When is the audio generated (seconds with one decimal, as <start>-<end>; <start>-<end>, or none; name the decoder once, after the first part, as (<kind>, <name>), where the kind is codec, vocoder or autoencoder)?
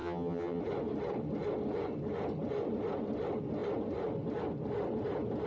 0.0-0.6 (vocoder, HiFi-GAN)